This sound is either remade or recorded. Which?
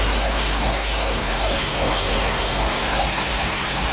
remade